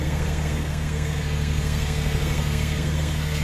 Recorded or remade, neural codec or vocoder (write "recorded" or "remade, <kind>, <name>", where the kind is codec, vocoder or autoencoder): remade, codec, SNAC